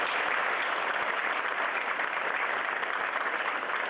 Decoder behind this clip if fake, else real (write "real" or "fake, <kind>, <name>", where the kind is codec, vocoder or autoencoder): real